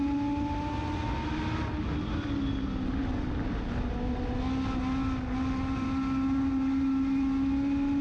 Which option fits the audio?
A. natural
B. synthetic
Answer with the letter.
A